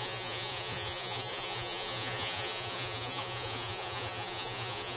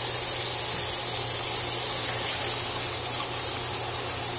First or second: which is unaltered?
second